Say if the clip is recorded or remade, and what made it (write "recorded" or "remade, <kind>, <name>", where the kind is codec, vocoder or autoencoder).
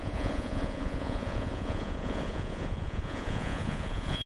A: remade, vocoder, Vocos